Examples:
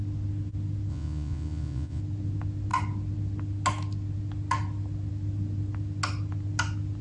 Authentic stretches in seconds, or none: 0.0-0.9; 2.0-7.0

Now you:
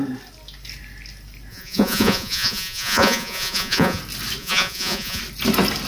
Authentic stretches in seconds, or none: 0.0-1.5; 4.0-4.4; 5.2-5.9

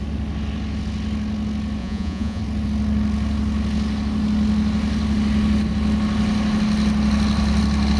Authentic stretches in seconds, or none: 0.0-1.8; 2.4-8.0

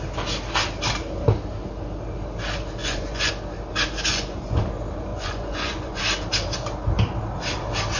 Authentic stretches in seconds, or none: 0.0-2.8; 3.3-4.1; 4.6-5.1; 6.0-8.0

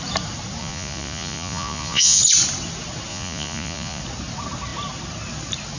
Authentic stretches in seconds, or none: 0.0-0.6; 2.2-3.1; 4.0-5.8